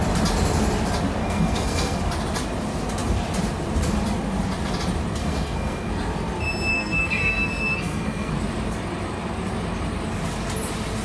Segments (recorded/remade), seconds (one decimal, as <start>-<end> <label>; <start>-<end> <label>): 0.0-1.2 recorded; 1.2-2.0 remade; 2.0-5.2 recorded; 5.2-5.9 remade; 5.9-6.7 recorded; 6.7-8.3 remade; 8.3-11.0 recorded